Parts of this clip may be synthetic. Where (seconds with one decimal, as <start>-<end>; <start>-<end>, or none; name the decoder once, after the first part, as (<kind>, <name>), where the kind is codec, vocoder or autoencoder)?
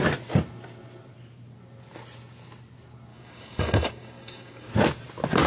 3.1-4.7 (codec, DAC)